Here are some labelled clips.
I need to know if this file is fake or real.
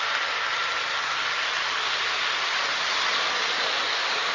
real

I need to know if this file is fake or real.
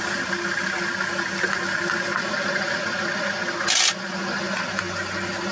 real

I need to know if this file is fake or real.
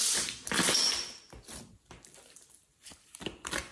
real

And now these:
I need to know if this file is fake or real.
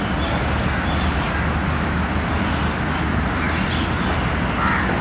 real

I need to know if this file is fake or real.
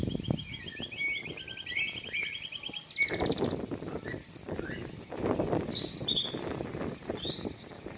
real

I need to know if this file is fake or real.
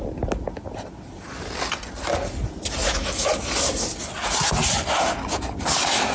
real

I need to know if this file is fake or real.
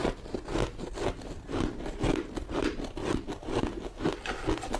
real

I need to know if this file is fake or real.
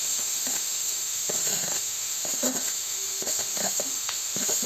fake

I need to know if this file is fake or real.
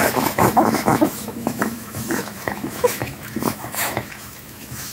fake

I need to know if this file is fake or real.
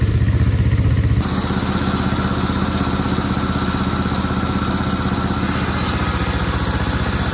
real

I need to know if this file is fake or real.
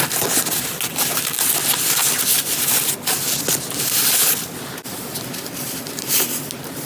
real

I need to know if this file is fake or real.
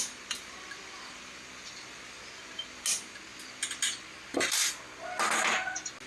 real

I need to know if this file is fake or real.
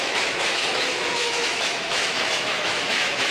fake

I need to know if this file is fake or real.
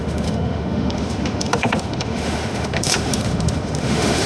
fake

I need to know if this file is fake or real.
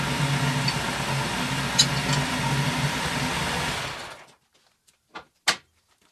real